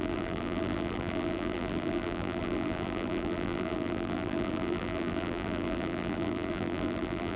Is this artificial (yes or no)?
yes